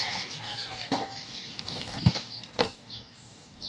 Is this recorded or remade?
remade